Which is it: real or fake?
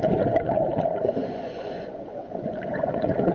fake